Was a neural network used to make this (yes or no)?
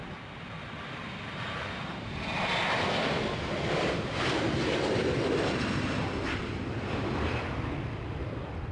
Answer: no